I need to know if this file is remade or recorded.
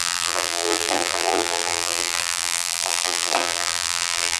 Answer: remade